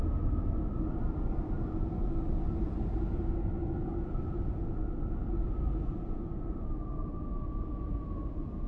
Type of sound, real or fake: real